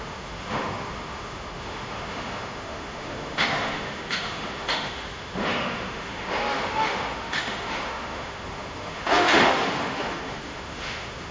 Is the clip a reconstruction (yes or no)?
yes